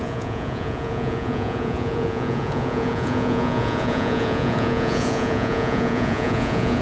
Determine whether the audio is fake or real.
fake